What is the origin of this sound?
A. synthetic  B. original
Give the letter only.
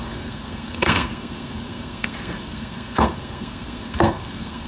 A